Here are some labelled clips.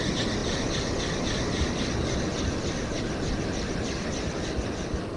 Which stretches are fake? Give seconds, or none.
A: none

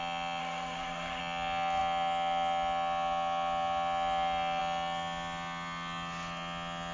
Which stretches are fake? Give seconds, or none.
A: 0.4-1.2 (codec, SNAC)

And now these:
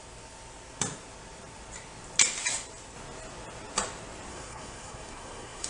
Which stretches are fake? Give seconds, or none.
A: 4.3-5.7 (codec, SNAC)

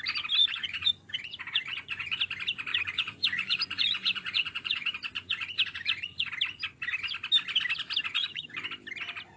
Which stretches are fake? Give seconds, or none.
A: 0.4-2.2 (vocoder, Vocos); 2.7-6.3; 8.0-8.6

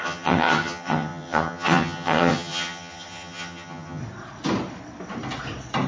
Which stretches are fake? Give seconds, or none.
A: 0.0-4.0 (vocoder, HiFi-GAN)

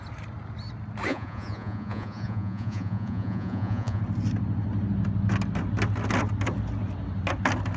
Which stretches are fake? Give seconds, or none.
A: 1.1-4.0 (vocoder, Vocos)